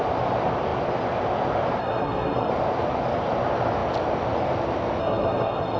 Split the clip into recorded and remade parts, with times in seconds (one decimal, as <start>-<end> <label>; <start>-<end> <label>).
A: 0.0-1.8 recorded; 1.8-2.5 remade; 2.5-5.0 recorded; 5.0-5.8 remade